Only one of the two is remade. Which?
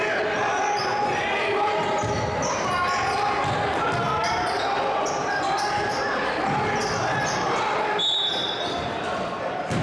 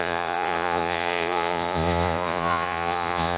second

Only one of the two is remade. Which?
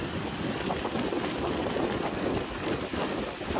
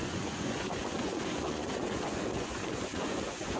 second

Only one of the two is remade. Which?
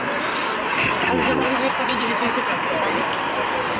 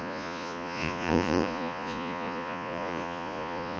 second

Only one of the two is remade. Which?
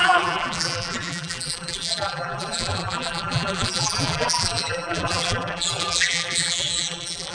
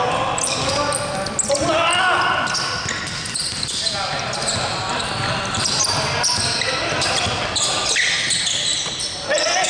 first